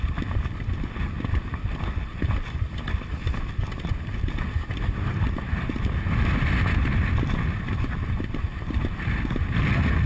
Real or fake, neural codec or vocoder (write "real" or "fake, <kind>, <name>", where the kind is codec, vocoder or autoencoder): real